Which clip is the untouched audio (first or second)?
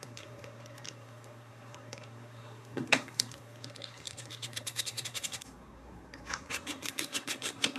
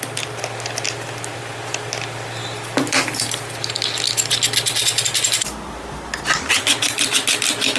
second